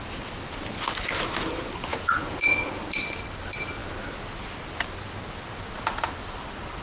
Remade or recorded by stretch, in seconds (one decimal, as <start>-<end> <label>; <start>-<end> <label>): 0.0-1.9 recorded; 1.9-2.7 remade; 2.7-6.8 recorded